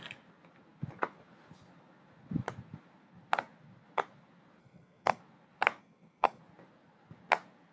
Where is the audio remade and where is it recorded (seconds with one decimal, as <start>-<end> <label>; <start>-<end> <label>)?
0.0-4.6 recorded; 4.6-5.2 remade; 5.2-5.8 recorded; 5.8-6.4 remade; 6.4-7.7 recorded